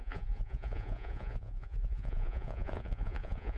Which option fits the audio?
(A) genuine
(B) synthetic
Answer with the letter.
B